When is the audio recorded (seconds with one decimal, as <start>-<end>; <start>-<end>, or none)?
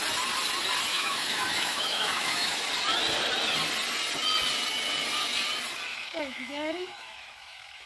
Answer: 0.0-0.9; 2.7-5.9